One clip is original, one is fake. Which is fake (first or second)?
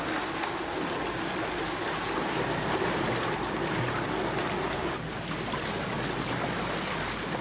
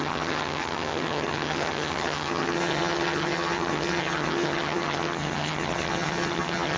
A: second